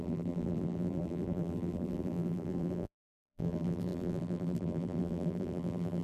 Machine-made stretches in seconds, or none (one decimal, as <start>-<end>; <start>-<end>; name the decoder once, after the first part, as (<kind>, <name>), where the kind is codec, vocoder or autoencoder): 0.0-6.0 (vocoder, BigVGAN v2)